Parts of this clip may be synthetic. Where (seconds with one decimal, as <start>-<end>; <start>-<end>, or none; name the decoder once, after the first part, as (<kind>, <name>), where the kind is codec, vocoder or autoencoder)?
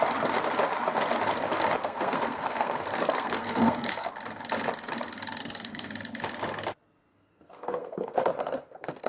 1.8-4.1 (codec, SNAC); 5.4-5.9; 7.1-9.1